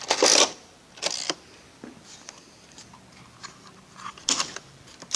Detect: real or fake real